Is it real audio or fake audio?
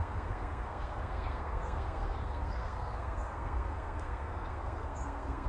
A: fake